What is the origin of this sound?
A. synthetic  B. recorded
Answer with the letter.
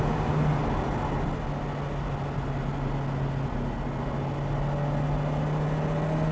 B